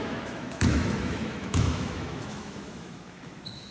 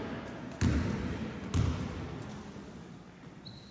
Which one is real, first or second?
second